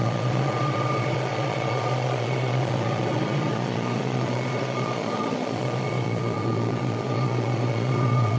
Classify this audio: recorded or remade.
remade